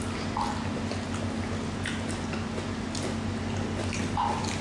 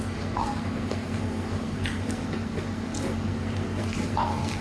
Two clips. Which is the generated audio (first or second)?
second